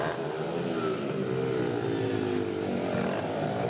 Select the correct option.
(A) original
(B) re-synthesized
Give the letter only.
A